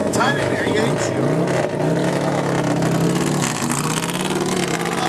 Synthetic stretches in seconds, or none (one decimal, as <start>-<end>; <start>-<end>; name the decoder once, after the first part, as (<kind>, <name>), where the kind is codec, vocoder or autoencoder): 0.0-0.7 (autoencoder, DAC-VAE); 2.0-2.5